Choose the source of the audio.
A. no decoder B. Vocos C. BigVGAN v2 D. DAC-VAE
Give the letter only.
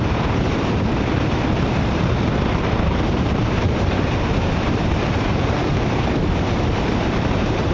C